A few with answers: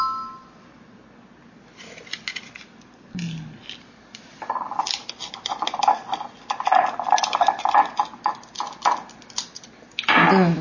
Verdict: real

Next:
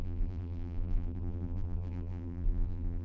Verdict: fake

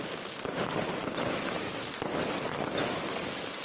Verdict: fake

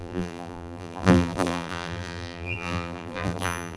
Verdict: fake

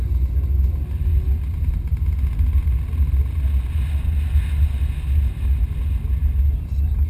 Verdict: real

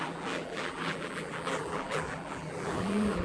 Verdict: fake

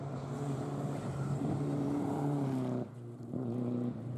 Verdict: fake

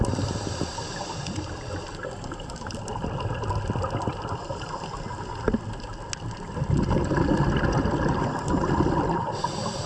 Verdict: real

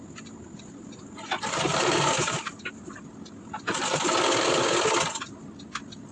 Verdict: real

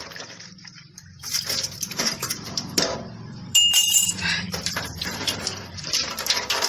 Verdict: fake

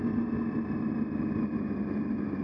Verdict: real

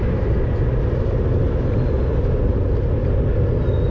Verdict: real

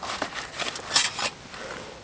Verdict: real